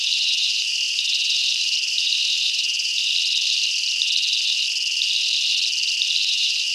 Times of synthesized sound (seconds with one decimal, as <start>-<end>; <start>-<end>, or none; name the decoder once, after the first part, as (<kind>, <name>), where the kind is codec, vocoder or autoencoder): 0.0-3.1 (vocoder, BigVGAN v2); 6.2-6.7